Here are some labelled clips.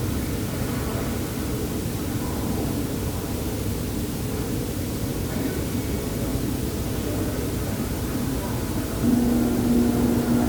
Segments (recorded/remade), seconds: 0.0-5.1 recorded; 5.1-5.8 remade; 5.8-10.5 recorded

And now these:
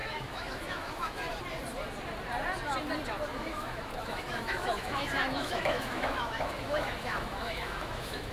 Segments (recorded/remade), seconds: 0.0-1.4 remade; 1.4-3.3 recorded; 3.3-8.3 remade

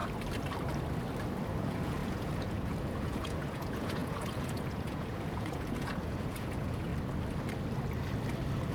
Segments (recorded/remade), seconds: 0.0-1.6 recorded; 1.6-6.9 remade; 6.9-8.7 recorded